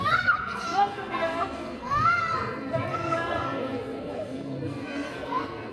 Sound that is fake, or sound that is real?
fake